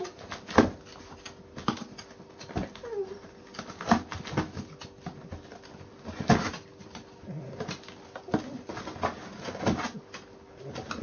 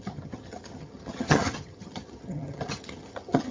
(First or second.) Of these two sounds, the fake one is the second